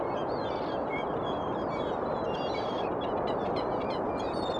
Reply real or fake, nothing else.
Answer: real